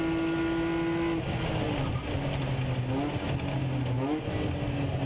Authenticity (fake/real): real